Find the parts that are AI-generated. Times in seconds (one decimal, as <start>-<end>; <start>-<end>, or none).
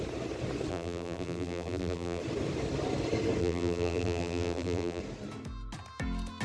0.7-2.2; 3.4-5.0